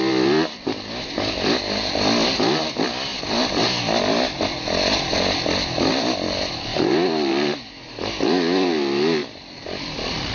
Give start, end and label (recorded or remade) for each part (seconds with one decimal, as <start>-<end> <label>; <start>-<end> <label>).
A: 0.0-6.7 recorded; 6.7-7.3 remade; 7.3-9.2 recorded; 9.2-9.8 remade; 9.8-10.3 recorded